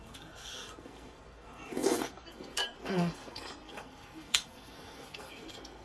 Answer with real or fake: fake